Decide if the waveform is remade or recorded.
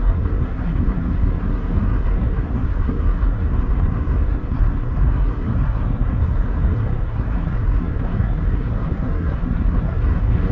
remade